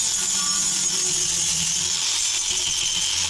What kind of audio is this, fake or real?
real